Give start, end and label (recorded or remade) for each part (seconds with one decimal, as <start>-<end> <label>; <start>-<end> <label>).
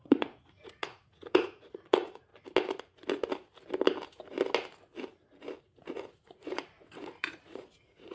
0.0-2.3 remade; 2.3-5.6 recorded; 5.6-8.1 remade